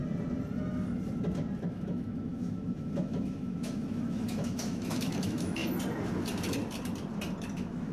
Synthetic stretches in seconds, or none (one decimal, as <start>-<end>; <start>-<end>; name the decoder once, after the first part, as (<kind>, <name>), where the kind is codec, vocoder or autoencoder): 1.7-5.6 (autoencoder, DAC-VAE); 7.5-7.9